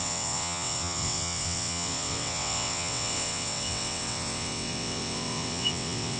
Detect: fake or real fake